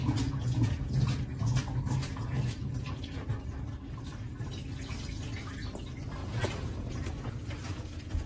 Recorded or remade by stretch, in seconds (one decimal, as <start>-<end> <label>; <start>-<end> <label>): 0.0-3.3 remade; 3.3-6.2 recorded; 6.2-8.3 remade